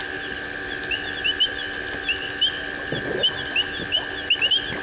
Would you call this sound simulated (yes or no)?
no